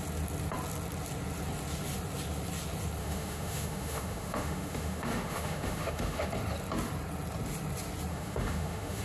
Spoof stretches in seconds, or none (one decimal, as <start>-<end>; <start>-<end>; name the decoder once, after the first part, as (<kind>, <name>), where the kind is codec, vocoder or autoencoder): 3.0-6.3 (autoencoder, DAC-VAE); 8.1-9.0